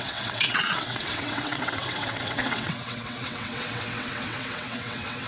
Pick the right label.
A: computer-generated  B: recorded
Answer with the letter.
A